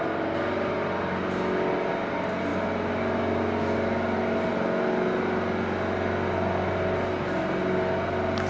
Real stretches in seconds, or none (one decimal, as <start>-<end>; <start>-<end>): 0.0-8.5